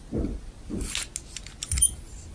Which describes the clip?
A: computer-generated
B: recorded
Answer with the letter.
B